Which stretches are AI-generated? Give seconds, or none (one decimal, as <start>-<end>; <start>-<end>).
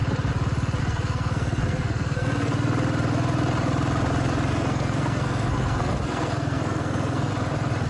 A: 0.8-2.5; 4.5-7.3